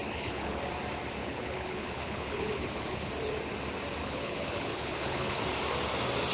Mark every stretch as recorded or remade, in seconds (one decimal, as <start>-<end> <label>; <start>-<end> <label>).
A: 0.0-0.6 remade; 0.6-1.2 recorded; 1.2-3.1 remade; 3.1-4.0 recorded; 4.0-5.4 remade; 5.4-6.3 recorded